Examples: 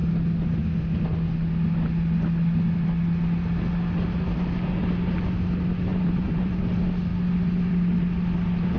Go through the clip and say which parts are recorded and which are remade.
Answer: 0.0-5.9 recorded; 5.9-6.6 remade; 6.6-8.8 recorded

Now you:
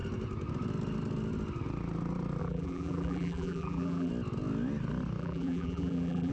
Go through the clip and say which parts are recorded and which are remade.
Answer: 0.0-2.4 recorded; 2.4-4.1 remade; 4.1-5.2 recorded; 5.2-6.3 remade

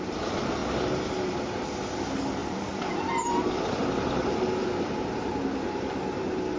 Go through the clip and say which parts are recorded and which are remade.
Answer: 0.0-2.4 recorded; 2.4-5.1 remade; 5.1-6.6 recorded

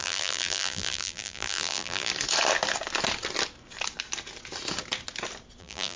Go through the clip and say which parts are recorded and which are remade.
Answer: 0.0-2.1 remade; 2.1-5.6 recorded; 5.6-6.0 remade

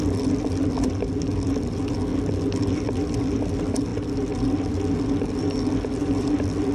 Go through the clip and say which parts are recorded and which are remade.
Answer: 0.0-6.0 recorded; 6.0-6.7 remade

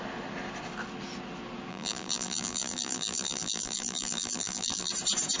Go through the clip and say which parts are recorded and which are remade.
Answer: 0.0-1.7 recorded; 1.7-4.9 remade; 4.9-5.4 recorded